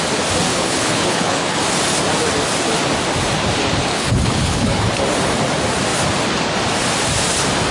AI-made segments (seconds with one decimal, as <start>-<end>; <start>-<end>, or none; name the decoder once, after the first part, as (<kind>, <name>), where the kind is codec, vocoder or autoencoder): 0.5-1.6 (codec, HILCodec); 3.9-4.8